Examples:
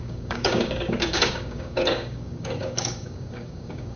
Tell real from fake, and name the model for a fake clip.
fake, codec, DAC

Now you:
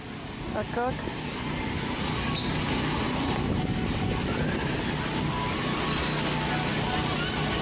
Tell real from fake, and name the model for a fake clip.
real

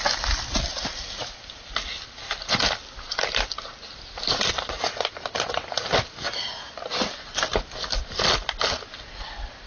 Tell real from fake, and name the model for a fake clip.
real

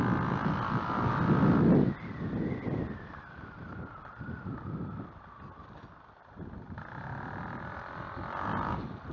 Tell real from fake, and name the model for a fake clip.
real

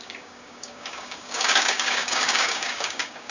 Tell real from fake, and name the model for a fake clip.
fake, codec, DAC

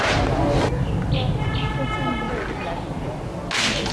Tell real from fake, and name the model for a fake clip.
real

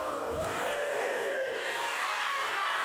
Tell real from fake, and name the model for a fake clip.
fake, codec, DAC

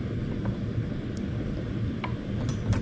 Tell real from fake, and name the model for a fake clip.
real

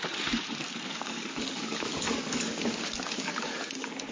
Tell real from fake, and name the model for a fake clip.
fake, codec, DAC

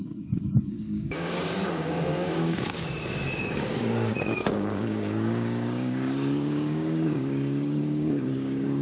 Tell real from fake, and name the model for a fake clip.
fake, codec, DAC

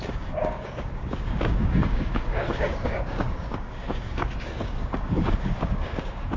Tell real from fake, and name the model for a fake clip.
fake, codec, DAC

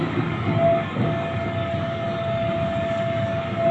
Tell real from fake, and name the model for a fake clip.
fake, codec, DAC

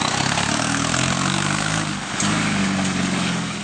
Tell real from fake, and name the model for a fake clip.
fake, codec, DAC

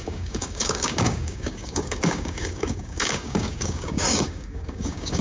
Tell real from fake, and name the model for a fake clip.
fake, codec, DAC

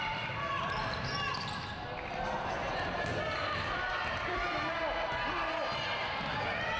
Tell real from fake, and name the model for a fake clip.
real